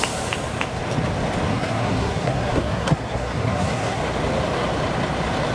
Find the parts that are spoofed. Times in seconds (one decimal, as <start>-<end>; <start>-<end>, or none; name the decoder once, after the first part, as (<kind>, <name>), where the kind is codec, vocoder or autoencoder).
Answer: 1.5-4.0 (codec, SNAC)